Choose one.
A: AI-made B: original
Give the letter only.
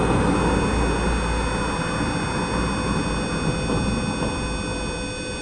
B